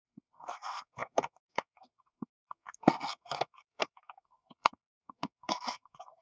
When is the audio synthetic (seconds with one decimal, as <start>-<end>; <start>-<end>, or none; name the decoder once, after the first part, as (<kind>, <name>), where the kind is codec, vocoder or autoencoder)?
0.0-6.2 (codec, SNAC)